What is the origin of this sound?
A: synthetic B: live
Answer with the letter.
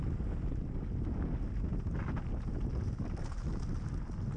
B